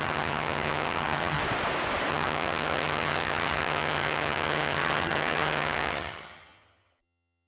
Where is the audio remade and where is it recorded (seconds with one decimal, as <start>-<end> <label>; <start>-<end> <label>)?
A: 0.0-1.4 remade; 1.4-2.1 recorded; 2.1-7.5 remade